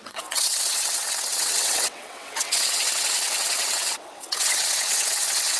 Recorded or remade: remade